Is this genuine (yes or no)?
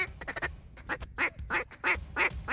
yes